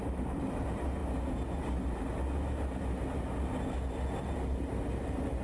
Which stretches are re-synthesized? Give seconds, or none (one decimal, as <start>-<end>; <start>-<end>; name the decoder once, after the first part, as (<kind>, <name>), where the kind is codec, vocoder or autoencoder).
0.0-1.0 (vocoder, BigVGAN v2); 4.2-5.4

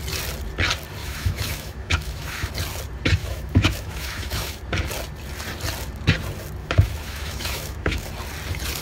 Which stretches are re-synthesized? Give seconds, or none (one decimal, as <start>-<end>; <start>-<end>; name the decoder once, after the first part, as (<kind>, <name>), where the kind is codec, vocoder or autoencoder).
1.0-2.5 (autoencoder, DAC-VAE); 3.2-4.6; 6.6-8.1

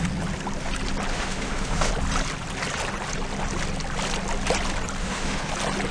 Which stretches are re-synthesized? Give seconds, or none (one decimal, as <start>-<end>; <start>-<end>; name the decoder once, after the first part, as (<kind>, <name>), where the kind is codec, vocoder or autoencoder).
1.1-1.9 (autoencoder, DAC-VAE); 5.0-5.5

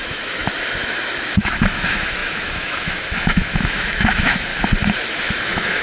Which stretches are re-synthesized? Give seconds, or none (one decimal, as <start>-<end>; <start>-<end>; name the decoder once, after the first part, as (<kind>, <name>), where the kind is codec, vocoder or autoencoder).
0.0-0.4 (autoencoder, DAC-VAE); 1.4-4.5; 5.2-5.8

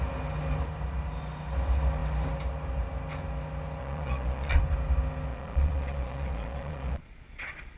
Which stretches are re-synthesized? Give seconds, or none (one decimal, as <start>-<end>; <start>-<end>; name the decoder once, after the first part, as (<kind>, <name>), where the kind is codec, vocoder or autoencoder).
3.8-4.6 (vocoder, Vocos); 5.3-7.8

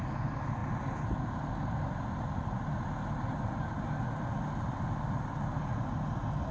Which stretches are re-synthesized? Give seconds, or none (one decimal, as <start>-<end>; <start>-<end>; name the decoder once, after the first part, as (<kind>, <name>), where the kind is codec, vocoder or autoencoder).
none

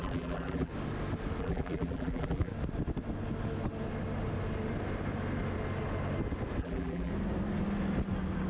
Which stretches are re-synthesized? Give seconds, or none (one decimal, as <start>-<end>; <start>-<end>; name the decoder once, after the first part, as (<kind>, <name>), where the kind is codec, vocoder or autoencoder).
0.0-0.7 (vocoder, BigVGAN v2); 1.4-2.5; 6.6-7.1